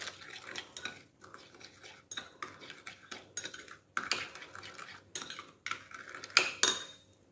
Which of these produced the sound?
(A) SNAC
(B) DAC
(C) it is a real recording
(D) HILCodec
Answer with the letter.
C